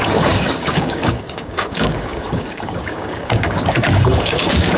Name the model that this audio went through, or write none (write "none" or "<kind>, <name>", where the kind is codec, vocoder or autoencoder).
codec, DAC